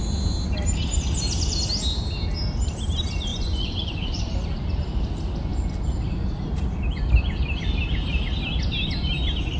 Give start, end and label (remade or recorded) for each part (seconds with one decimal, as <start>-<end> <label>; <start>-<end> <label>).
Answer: 0.0-3.3 recorded; 3.3-4.2 remade; 4.2-9.6 recorded